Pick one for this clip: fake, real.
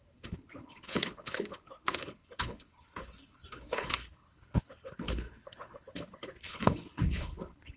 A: fake